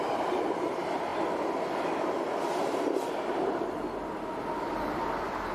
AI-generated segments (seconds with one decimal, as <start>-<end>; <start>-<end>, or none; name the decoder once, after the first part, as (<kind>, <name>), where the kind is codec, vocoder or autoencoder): none